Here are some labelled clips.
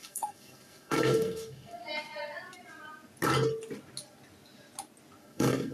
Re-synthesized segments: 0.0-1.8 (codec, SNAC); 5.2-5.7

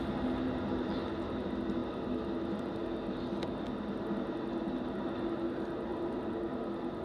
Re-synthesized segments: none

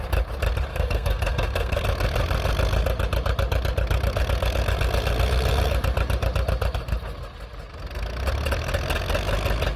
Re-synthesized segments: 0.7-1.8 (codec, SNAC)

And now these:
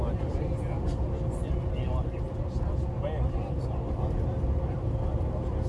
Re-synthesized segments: none

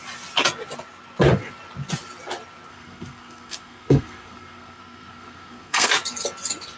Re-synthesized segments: 2.7-5.9 (codec, SNAC)